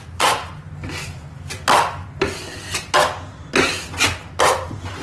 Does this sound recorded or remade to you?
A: recorded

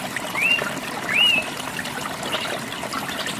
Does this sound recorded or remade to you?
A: recorded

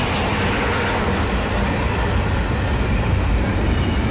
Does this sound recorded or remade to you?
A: recorded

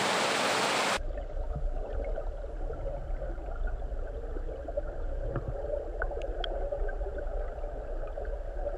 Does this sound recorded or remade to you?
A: recorded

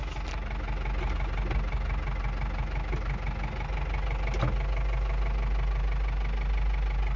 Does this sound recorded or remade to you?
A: recorded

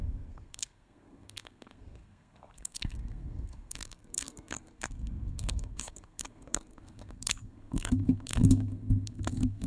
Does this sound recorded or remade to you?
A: remade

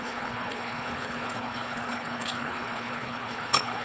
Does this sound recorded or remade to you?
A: remade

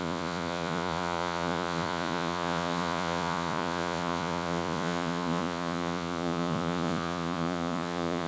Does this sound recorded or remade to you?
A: remade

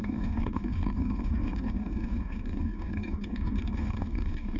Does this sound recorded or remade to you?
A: remade